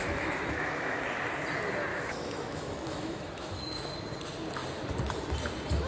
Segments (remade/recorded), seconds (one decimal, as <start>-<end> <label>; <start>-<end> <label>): 0.0-1.0 remade; 1.0-1.9 recorded; 1.9-3.9 remade; 3.9-5.9 recorded